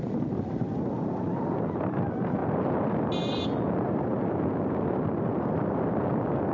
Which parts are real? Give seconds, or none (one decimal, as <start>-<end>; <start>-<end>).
0.0-6.5